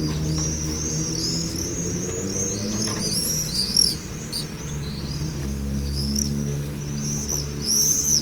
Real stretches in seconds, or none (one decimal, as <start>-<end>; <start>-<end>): 0.0-5.4; 6.8-8.2